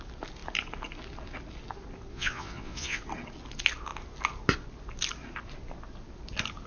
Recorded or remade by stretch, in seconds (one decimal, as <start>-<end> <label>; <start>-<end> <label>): 0.0-2.1 recorded; 2.1-3.0 remade; 3.0-6.7 recorded